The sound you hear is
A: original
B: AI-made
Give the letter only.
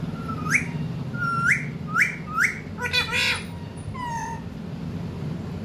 A